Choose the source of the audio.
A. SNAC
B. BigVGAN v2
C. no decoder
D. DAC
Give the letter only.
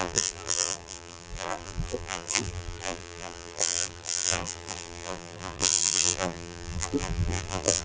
B